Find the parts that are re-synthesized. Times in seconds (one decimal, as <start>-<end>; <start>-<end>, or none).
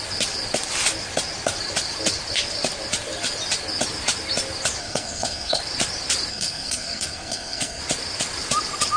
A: 4.8-5.6; 6.3-7.8